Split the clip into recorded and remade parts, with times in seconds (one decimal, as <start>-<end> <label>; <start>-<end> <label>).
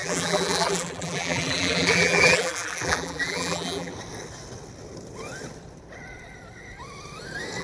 0.0-3.9 remade; 3.9-7.6 recorded